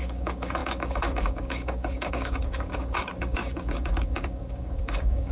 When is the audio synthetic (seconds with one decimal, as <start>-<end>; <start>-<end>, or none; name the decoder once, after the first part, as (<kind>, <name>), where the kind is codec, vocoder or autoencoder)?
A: 0.0-5.3 (codec, DAC)